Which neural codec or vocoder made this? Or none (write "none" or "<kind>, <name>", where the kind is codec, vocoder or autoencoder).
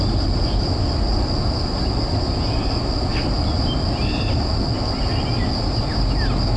none